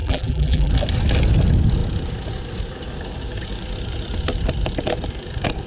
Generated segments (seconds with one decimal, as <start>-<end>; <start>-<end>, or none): 0.0-0.7